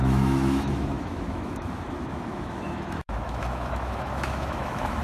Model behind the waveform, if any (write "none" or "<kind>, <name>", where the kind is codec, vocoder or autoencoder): autoencoder, DAC-VAE